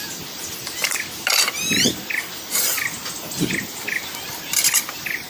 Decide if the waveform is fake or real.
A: real